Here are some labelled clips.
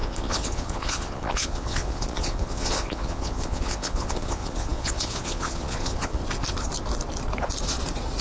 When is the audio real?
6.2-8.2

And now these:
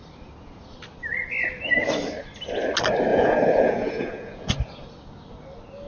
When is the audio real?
0.0-3.1; 4.5-5.9

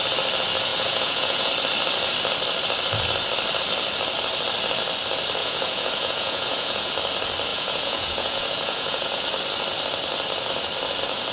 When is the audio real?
0.0-0.7; 1.5-5.4; 6.9-7.5; 9.2-11.3